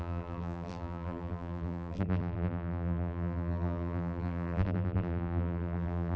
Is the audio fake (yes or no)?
yes